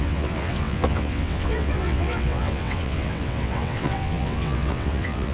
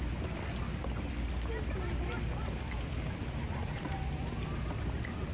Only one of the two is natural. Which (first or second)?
second